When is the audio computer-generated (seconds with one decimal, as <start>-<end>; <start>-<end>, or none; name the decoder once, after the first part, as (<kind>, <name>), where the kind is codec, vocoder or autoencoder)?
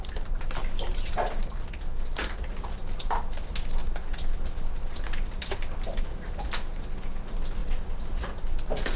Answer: 2.2-2.8 (vocoder, BigVGAN v2)